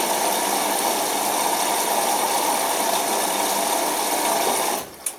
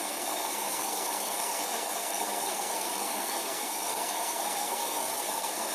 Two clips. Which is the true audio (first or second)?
first